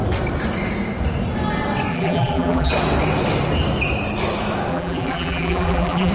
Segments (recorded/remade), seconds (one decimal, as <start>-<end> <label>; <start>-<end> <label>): 0.0-1.9 recorded; 1.9-2.7 remade; 2.7-4.7 recorded; 4.7-6.1 remade